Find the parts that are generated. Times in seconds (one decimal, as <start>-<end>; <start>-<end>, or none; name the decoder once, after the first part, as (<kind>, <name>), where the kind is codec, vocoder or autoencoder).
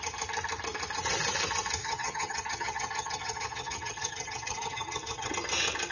1.8-5.3 (vocoder, HiFi-GAN)